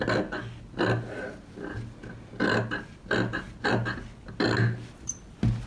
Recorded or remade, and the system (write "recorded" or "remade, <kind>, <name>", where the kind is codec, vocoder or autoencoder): recorded